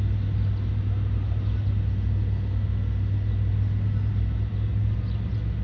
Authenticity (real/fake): real